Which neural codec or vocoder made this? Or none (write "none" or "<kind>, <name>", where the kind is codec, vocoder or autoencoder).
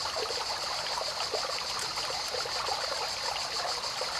none